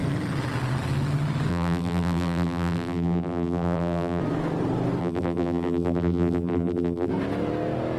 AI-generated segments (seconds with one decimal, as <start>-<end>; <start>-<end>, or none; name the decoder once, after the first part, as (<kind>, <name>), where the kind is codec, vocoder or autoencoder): 1.5-4.2 (vocoder, BigVGAN v2); 5.0-7.1